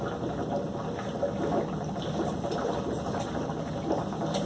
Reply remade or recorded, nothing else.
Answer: recorded